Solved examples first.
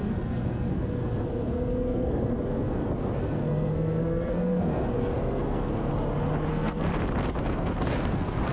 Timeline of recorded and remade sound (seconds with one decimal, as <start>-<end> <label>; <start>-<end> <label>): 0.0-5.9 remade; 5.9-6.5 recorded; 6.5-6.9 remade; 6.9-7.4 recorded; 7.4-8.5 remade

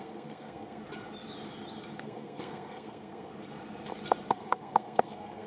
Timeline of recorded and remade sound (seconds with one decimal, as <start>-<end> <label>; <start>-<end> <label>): 0.0-0.8 remade; 0.8-2.0 recorded; 2.0-3.3 remade; 3.3-4.3 recorded; 4.3-5.5 remade

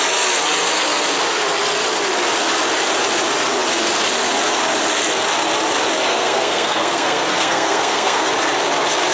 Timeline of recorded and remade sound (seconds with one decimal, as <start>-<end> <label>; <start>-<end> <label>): 0.0-6.1 recorded; 6.1-8.3 remade; 8.3-9.1 recorded